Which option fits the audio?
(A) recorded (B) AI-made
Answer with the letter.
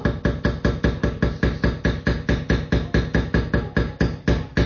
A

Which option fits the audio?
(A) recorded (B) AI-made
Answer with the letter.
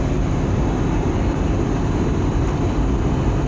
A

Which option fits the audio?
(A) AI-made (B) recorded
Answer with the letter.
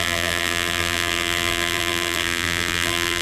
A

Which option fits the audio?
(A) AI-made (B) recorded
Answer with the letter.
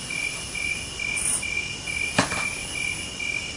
B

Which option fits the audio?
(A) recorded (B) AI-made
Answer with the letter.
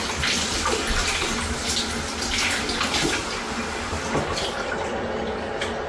A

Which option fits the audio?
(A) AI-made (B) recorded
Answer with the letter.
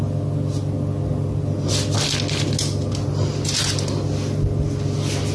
B